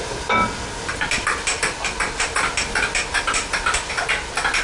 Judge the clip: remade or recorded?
recorded